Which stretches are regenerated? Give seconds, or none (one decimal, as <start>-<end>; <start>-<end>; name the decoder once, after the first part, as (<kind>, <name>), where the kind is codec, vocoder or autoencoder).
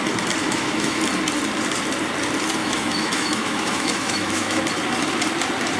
0.4-1.0 (autoencoder, DAC-VAE); 2.6-4.6